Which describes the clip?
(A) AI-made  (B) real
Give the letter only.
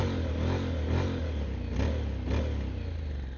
B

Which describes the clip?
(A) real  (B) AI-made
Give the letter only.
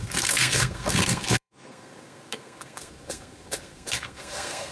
B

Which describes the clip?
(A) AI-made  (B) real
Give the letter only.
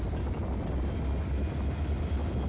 B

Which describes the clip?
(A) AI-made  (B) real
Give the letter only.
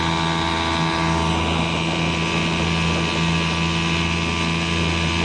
B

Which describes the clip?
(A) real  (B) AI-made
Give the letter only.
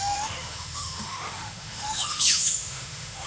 B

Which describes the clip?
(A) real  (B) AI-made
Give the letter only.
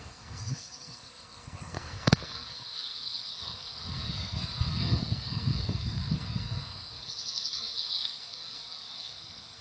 B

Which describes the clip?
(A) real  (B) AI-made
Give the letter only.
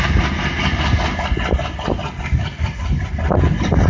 A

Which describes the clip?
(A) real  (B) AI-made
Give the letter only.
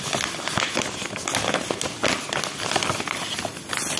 A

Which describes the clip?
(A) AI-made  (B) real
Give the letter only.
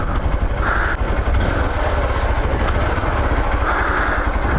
B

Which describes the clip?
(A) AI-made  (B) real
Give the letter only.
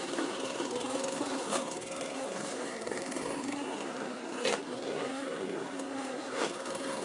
A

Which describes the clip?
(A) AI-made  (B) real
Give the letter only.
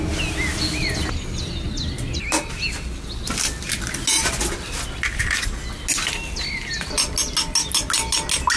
B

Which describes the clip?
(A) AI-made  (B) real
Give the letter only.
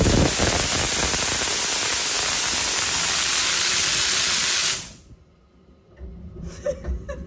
B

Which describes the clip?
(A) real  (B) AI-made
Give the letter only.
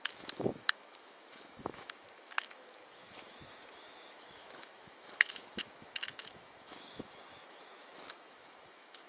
B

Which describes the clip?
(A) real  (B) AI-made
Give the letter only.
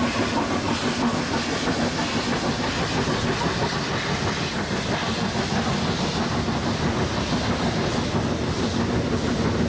A